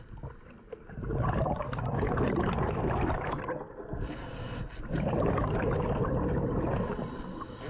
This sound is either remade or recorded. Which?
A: remade